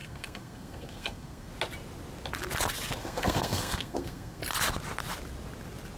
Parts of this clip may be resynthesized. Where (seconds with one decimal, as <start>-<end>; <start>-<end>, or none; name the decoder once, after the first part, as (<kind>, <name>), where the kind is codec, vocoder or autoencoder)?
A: 0.0-1.5 (codec, SNAC); 3.0-4.4